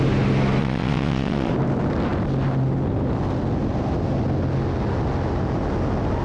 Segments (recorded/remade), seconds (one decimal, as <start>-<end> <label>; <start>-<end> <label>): 0.0-0.6 recorded; 0.6-1.5 remade; 1.5-6.2 recorded